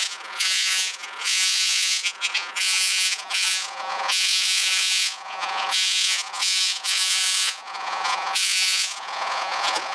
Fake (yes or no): yes